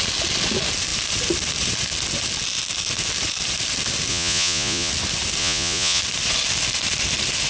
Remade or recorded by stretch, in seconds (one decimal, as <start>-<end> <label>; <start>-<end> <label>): 0.0-4.1 recorded; 4.1-4.9 remade; 4.9-5.4 recorded; 5.4-6.0 remade; 6.0-7.5 recorded